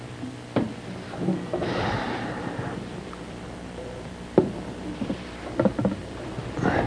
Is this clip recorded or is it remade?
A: remade